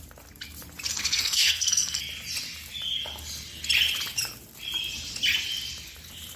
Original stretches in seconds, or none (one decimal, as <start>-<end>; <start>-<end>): 0.0-0.9; 2.0-6.4